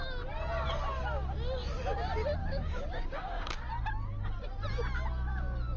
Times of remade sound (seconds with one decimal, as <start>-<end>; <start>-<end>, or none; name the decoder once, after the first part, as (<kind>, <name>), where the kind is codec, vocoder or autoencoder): 2.4-3.6 (codec, DAC)